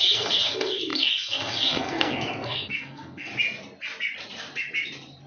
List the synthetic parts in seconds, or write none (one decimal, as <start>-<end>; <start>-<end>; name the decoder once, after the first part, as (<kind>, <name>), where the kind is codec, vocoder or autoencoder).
0.0-3.3 (codec, SNAC)